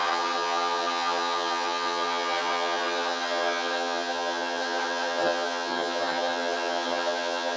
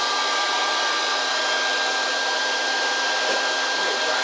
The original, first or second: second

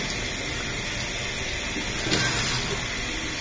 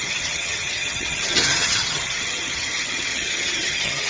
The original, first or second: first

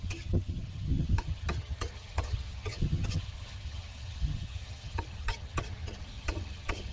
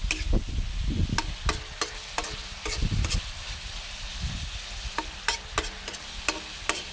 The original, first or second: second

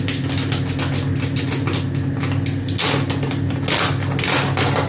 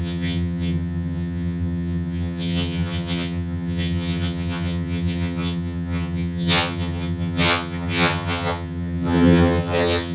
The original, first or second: first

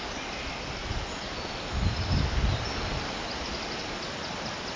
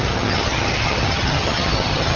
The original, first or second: first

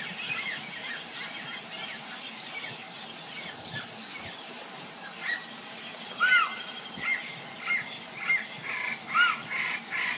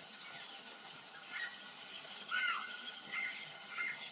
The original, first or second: first